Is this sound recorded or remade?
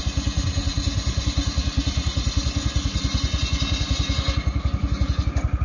recorded